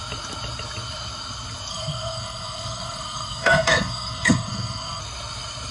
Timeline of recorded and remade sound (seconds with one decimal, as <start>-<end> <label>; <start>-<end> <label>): 0.0-1.7 recorded; 1.7-5.0 remade; 5.0-5.7 recorded